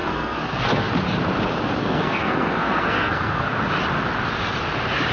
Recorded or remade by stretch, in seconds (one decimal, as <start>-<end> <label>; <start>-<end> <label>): 0.0-0.9 remade; 0.9-1.8 recorded; 1.8-3.5 remade; 3.5-5.1 recorded